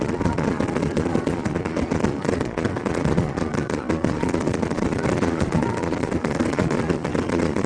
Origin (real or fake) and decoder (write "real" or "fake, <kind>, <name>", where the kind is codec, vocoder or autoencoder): fake, vocoder, Vocos